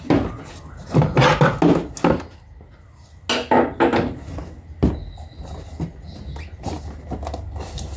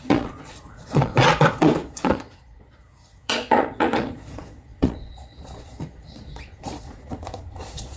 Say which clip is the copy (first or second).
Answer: second